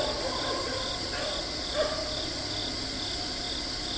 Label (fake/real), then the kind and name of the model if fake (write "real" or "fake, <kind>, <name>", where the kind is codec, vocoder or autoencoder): real